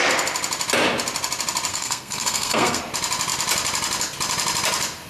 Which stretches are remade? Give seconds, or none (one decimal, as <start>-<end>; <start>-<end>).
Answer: 1.7-2.8